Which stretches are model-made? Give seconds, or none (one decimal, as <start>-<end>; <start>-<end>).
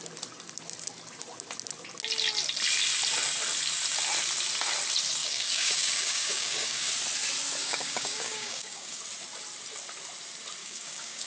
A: 5.2-6.9; 7.6-9.0; 10.6-11.3